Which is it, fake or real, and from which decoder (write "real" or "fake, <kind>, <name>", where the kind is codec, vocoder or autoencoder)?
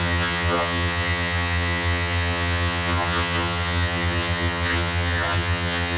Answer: fake, vocoder, HiFi-GAN